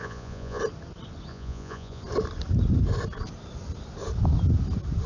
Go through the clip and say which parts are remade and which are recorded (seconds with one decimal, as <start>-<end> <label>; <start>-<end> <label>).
0.0-0.6 remade; 0.6-1.3 recorded; 1.3-2.0 remade; 2.0-5.1 recorded